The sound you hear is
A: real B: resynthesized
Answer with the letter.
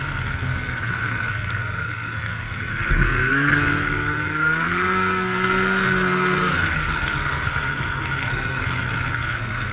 B